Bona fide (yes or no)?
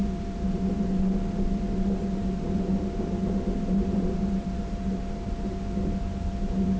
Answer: yes